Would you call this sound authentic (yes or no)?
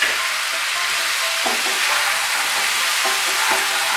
yes